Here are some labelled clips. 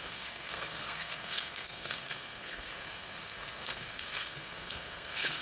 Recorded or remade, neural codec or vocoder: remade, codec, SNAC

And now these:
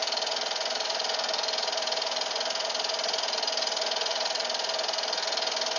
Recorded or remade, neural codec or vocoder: recorded